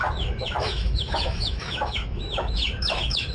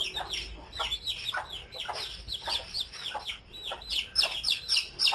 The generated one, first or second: first